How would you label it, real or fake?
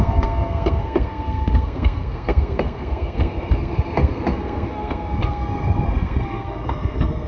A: fake